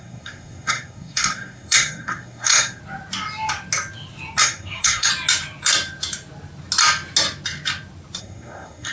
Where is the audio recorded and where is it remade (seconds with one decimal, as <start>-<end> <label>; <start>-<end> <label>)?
0.0-2.8 remade; 2.8-4.4 recorded; 4.4-5.1 remade; 5.1-8.2 recorded; 8.2-8.9 remade